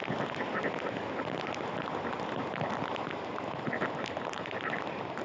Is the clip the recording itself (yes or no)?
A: yes